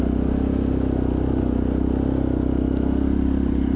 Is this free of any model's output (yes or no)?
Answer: yes